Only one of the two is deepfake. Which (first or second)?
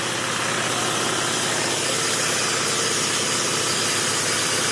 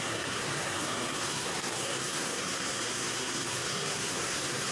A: second